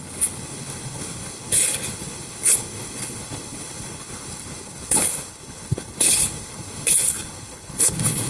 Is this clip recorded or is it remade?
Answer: remade